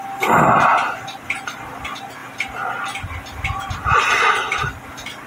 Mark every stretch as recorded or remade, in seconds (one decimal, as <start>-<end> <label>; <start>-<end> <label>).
0.0-5.3 recorded